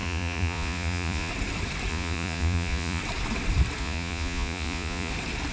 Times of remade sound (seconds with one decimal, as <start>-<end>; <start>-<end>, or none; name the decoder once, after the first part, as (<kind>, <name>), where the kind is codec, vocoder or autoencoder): 0.0-1.3 (vocoder, Vocos); 1.9-3.0; 3.8-5.1